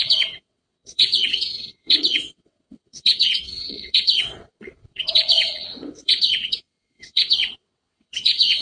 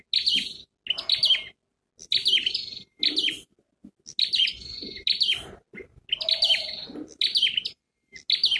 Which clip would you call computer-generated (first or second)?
first